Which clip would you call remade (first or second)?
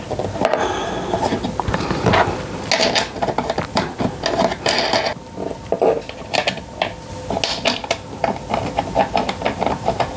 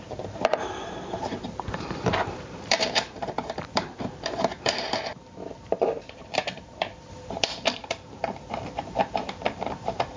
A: second